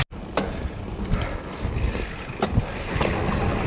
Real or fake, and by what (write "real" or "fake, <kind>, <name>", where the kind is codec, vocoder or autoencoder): real